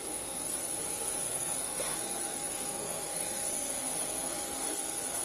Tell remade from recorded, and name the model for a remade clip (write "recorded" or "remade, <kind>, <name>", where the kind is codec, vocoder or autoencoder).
remade, codec, SNAC